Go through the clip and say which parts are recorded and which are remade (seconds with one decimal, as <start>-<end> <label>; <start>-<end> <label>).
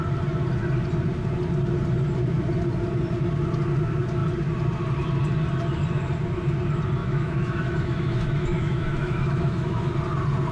0.0-7.0 recorded; 7.0-9.9 remade; 9.9-10.5 recorded